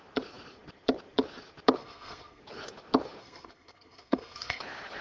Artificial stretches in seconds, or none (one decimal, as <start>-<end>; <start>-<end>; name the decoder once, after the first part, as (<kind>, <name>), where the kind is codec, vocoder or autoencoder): 1.8-2.4 (codec, SNAC); 3.2-4.6